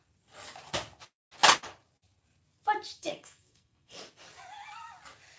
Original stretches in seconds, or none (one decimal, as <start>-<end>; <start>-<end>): 0.0-3.0; 4.0-5.4